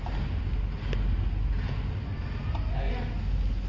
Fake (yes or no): no